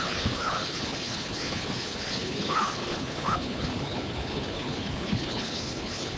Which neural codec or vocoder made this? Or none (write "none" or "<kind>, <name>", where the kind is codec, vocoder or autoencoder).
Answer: codec, HILCodec